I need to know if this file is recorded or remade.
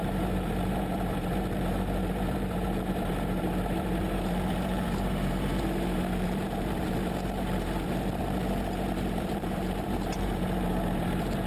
remade